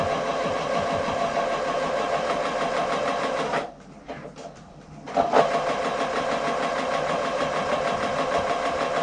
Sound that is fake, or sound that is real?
real